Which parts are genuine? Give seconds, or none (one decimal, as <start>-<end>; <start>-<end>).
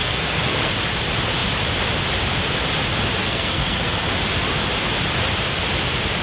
0.7-3.2; 4.1-6.2